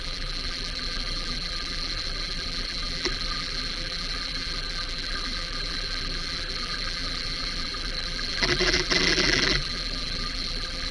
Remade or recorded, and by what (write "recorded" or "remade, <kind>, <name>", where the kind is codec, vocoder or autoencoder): remade, vocoder, BigVGAN v2